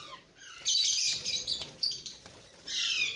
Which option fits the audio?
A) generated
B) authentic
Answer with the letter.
A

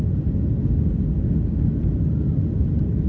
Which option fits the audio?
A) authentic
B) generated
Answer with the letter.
A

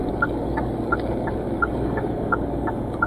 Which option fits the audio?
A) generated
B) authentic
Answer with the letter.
A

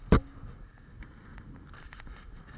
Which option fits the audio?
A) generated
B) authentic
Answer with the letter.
B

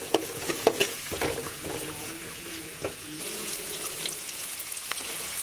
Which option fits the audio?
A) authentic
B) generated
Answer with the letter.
B